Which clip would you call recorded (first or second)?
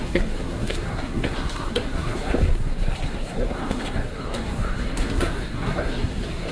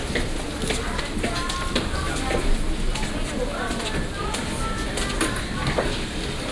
second